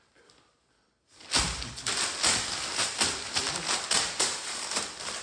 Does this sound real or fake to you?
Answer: real